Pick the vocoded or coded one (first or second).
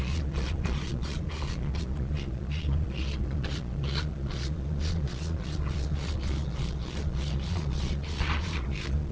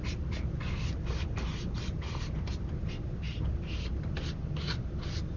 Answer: first